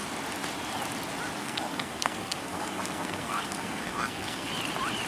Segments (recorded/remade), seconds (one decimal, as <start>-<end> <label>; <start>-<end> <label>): 0.0-1.4 recorded; 1.4-4.5 remade; 4.5-5.1 recorded